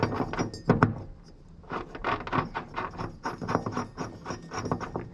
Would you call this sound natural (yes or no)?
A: yes